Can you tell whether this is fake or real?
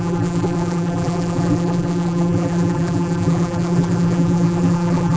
fake